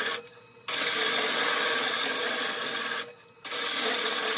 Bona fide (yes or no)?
yes